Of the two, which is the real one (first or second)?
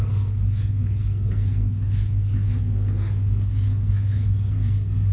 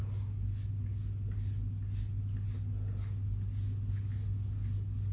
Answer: second